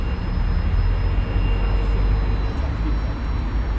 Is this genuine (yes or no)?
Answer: yes